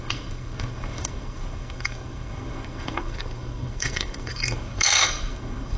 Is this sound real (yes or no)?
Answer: no